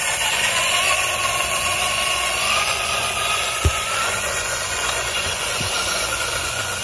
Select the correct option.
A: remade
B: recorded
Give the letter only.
A